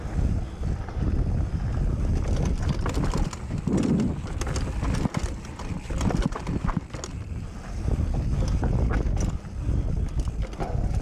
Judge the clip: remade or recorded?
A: recorded